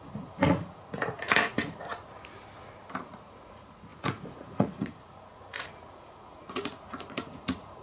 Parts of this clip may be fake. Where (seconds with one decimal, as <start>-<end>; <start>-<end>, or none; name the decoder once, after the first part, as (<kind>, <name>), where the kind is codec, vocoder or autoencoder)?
0.0-1.9 (vocoder, Vocos); 3.0-7.8